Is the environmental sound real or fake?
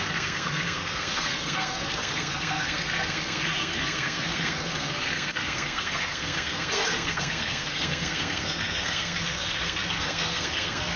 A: fake